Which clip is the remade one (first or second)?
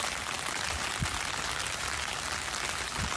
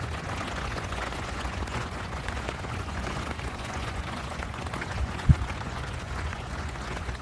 second